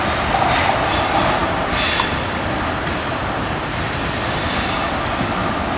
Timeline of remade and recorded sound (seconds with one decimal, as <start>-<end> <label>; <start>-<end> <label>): 0.0-5.8 recorded